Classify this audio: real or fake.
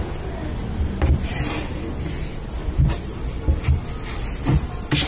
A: real